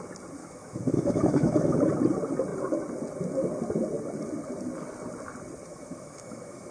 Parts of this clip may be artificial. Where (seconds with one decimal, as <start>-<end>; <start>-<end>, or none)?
0.4-1.8; 5.7-6.7